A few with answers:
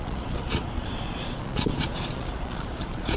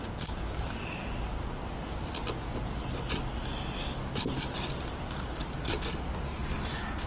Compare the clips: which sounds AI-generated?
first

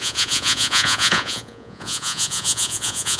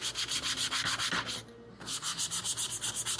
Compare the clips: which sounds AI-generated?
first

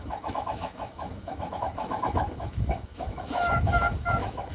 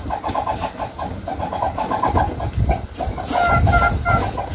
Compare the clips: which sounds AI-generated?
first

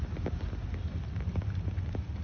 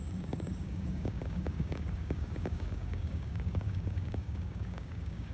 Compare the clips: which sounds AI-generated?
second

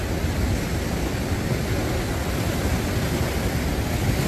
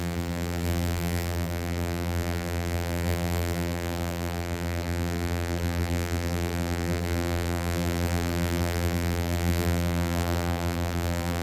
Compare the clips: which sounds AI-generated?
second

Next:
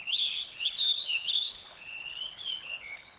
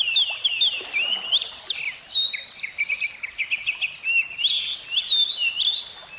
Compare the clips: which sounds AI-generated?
first